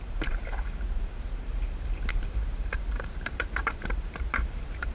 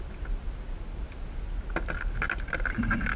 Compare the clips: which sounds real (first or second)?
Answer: second